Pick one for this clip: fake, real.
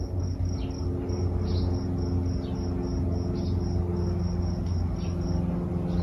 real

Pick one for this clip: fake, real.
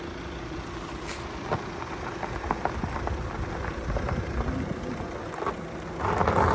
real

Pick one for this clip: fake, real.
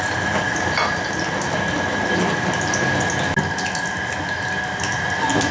real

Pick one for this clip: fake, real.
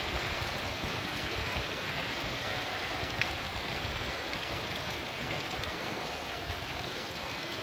fake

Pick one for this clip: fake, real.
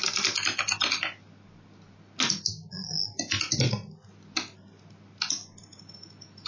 real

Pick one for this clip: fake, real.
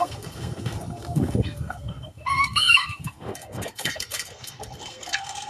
fake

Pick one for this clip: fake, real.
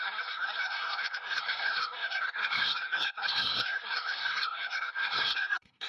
fake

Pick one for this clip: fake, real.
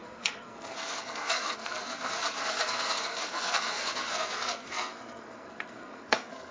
fake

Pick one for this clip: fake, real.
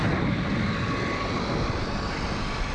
real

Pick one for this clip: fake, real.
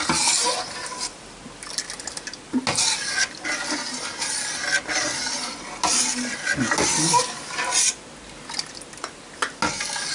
real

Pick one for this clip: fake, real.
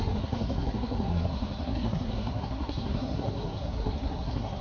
fake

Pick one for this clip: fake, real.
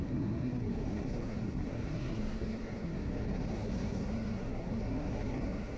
fake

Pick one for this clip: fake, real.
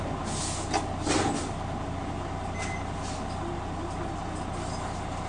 real